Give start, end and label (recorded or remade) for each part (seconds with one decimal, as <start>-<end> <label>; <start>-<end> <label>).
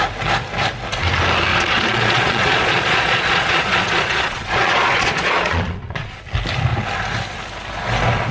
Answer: 0.0-1.5 recorded; 1.5-6.2 remade; 6.2-8.3 recorded